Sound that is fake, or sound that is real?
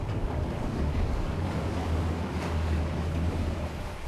fake